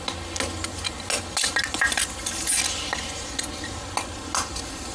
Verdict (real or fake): real